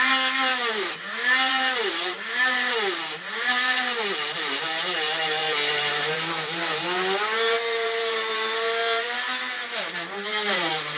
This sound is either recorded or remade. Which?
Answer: remade